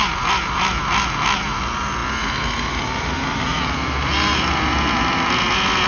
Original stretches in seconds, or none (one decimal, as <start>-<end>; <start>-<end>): 0.0-5.9